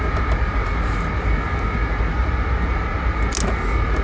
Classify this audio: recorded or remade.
recorded